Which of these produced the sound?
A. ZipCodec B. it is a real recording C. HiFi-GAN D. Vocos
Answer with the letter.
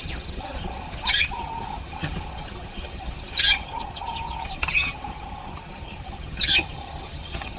C